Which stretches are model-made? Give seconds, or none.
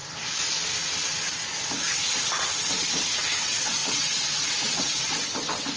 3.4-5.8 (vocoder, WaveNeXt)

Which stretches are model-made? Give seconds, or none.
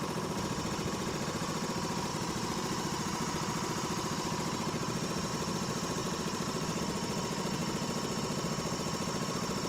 2.1-5.3 (vocoder, BigVGAN v2); 6.0-6.8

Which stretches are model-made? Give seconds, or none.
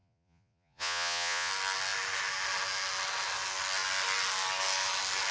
0.0-1.5 (vocoder, Vocos)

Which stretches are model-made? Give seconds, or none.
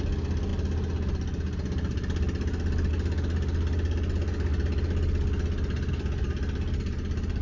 none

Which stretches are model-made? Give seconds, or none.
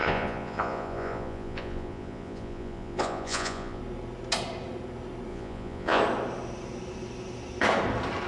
0.0-3.8 (vocoder, Vocos); 5.3-6.0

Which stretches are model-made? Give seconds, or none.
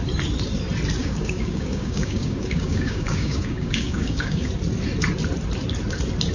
1.0-4.5 (codec, DAC)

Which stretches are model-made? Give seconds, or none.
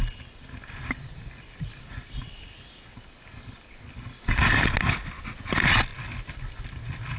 none